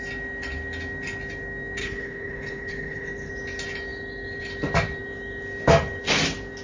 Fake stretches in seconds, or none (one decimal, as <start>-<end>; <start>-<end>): 1.8-3.3